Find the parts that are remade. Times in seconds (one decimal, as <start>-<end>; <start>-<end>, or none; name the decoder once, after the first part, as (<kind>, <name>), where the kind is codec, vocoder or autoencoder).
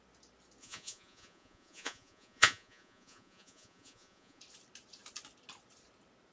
0.6-4.4 (vocoder, Vocos)